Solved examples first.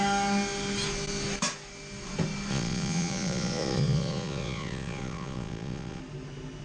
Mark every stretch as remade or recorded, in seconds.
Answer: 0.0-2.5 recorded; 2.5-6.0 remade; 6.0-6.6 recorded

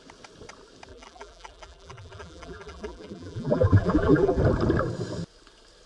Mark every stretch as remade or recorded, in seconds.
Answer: 0.0-0.9 recorded; 0.9-4.4 remade; 4.4-5.9 recorded

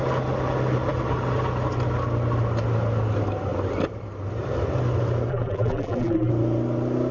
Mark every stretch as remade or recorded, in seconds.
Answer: 0.0-5.3 recorded; 5.3-6.3 remade; 6.3-7.1 recorded

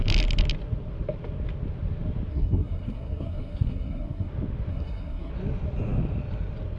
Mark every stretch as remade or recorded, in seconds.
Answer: 0.0-2.3 recorded; 2.3-4.3 remade; 4.3-4.7 recorded; 4.7-5.3 remade; 5.3-6.8 recorded

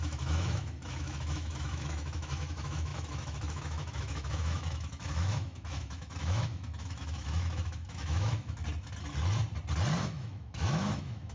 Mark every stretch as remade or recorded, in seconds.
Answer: 0.0-8.6 remade; 8.6-10.0 recorded; 10.0-11.3 remade

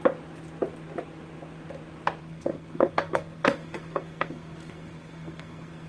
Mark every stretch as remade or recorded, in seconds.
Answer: 0.0-2.2 recorded; 2.2-5.9 remade

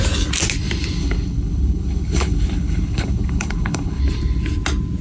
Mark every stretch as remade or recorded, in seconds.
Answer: 0.0-1.0 recorded; 1.0-4.0 remade; 4.0-5.0 recorded